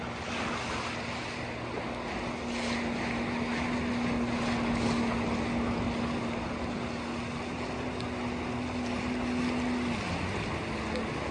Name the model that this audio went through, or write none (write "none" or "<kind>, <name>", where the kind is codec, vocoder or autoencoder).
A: none